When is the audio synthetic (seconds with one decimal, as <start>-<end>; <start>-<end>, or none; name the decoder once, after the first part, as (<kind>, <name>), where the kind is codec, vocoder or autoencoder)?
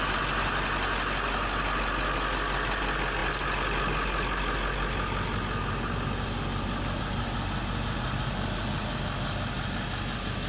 none